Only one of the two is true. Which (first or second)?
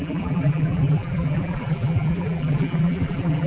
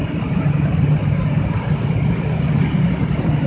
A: second